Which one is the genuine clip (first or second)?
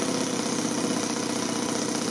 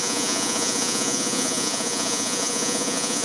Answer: first